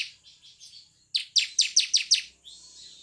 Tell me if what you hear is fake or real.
real